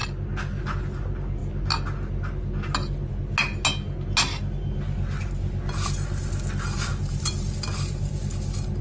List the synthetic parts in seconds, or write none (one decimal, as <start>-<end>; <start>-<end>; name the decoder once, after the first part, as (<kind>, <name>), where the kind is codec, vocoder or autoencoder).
6.9-8.1 (vocoder, BigVGAN v2)